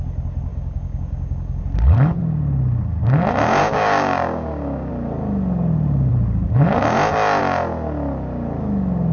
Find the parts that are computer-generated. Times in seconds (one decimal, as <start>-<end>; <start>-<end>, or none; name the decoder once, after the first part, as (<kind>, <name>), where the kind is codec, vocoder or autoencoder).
0.5-1.6 (codec, DAC); 3.6-4.9